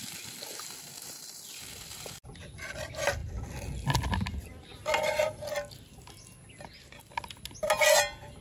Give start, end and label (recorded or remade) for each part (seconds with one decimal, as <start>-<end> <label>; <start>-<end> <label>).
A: 0.0-8.4 recorded